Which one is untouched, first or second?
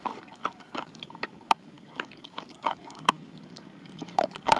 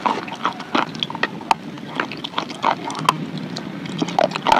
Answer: second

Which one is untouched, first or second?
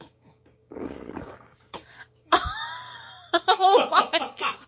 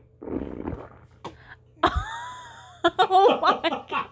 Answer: second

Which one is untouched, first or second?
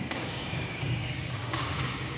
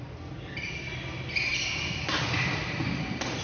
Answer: second